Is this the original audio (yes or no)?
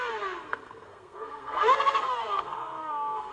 no